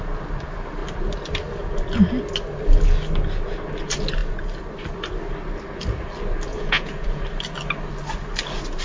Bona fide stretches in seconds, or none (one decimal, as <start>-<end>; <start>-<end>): 0.0-6.5; 7.2-8.8